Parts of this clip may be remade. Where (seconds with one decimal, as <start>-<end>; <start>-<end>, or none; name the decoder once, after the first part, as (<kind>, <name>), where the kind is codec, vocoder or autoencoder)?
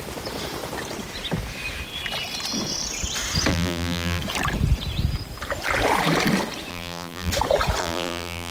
3.5-4.2 (vocoder, BigVGAN v2); 6.7-7.3; 7.8-8.5